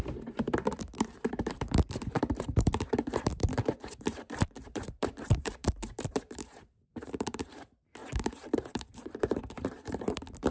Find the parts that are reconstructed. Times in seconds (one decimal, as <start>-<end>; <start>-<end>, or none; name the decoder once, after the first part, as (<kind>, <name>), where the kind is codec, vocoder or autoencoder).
0.0-10.5 (vocoder, BigVGAN v2)